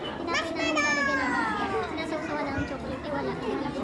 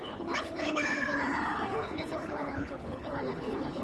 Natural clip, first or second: first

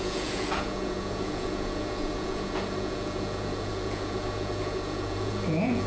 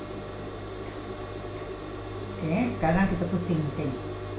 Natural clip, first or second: second